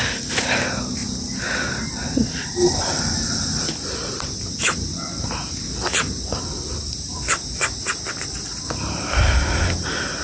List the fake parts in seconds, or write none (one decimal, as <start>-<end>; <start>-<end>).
none